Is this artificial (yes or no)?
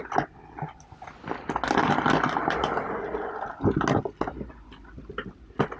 no